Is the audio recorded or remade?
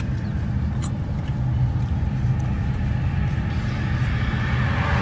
recorded